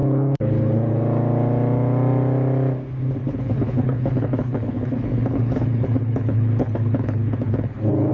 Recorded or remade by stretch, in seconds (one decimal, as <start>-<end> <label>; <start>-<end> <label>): 0.0-1.0 remade; 1.0-3.2 recorded; 3.2-8.1 remade